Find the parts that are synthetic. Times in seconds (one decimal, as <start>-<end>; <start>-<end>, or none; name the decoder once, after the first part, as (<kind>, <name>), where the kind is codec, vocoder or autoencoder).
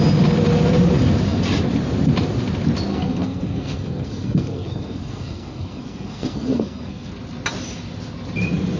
2.9-7.1 (codec, SNAC)